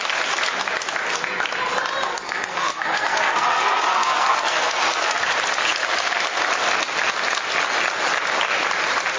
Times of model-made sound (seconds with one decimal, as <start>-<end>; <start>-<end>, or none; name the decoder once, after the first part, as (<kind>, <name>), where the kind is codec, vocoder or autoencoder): 2.1-5.1 (codec, SNAC)